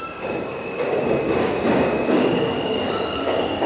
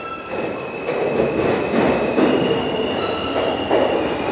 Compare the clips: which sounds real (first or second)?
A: second